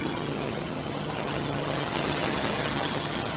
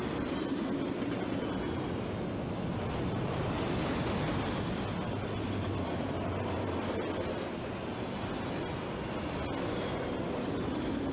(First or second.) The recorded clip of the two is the second